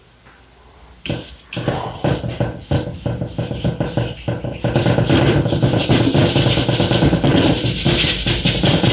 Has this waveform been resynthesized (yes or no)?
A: no